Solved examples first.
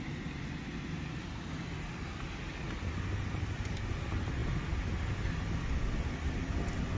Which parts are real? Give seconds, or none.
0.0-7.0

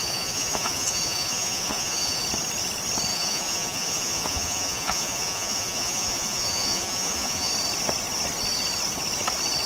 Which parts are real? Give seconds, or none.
2.2-3.1; 7.5-9.7

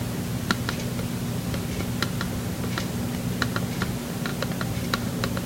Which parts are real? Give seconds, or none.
0.0-5.5

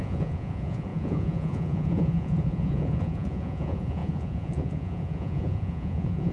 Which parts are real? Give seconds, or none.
none

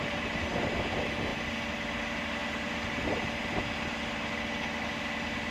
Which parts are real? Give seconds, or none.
0.0-5.5